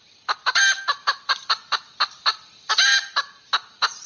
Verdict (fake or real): real